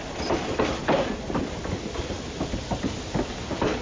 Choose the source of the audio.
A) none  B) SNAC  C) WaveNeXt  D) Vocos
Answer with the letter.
A